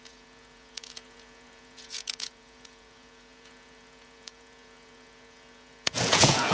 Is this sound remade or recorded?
remade